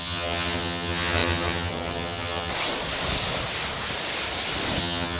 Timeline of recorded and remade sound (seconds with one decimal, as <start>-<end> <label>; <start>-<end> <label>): 0.0-2.5 remade; 2.5-4.8 recorded; 4.8-5.2 remade